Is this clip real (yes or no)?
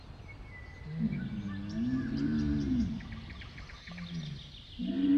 yes